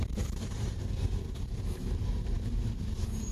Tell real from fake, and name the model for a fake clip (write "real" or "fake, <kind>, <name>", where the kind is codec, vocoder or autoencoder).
fake, vocoder, BigVGAN v2